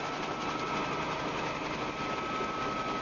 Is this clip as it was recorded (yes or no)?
yes